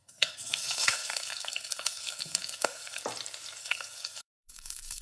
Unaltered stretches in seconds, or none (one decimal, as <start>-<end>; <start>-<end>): 3.0-3.6